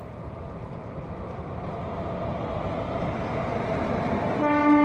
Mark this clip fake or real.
real